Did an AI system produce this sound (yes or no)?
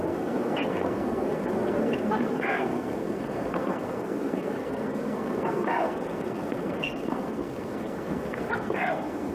yes